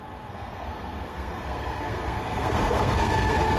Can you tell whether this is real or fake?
fake